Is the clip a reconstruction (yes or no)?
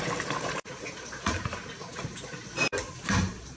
yes